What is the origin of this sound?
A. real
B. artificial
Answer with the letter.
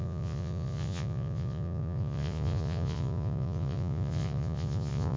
B